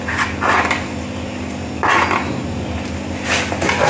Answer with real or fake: real